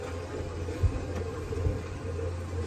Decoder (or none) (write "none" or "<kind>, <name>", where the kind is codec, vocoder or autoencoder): vocoder, BigVGAN v2